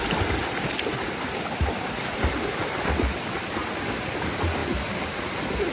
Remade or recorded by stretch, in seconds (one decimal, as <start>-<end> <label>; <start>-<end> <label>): 0.0-0.4 remade; 0.4-1.7 recorded; 1.7-4.6 remade; 4.6-5.3 recorded; 5.3-5.7 remade